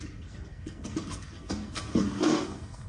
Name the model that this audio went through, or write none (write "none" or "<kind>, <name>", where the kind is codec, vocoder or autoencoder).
codec, SNAC